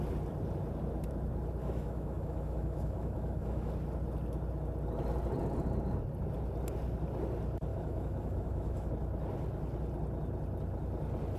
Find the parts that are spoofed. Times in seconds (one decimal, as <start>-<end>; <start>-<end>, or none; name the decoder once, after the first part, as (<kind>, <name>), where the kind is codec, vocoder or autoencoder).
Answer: 1.6-3.7 (autoencoder, DAC-VAE); 7.7-8.9

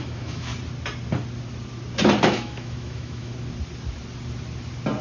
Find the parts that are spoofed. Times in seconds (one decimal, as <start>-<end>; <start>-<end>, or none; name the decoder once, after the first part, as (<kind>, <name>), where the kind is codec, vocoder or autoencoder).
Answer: 0.0-0.5 (autoencoder, DAC-VAE); 2.2-3.3